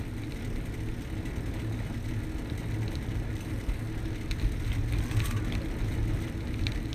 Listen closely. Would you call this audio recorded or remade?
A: recorded